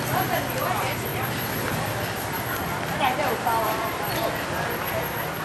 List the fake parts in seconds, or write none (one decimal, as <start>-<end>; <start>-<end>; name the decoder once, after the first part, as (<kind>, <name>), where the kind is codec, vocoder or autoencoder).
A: none